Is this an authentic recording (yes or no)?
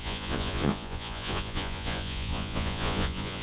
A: no